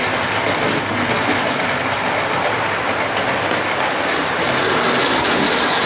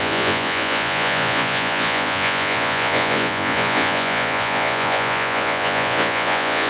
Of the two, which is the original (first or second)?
first